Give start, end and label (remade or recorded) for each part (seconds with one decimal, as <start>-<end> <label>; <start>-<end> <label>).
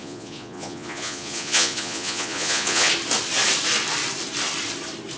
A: 0.0-2.9 remade; 2.9-5.2 recorded